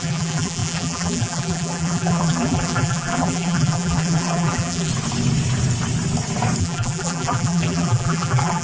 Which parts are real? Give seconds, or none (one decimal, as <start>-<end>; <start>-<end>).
4.9-6.6

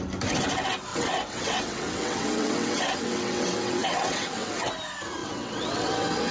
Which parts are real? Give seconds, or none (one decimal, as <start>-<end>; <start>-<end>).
0.0-0.9; 4.7-5.2

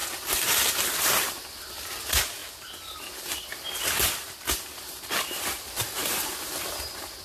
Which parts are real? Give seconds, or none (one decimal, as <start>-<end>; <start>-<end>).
0.0-7.2

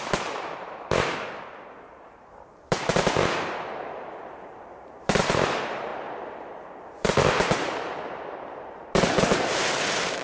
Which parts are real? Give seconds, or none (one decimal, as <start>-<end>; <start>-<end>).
5.9-9.4

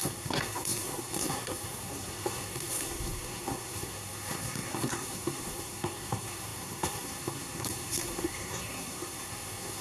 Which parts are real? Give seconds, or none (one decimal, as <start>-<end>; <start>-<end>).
none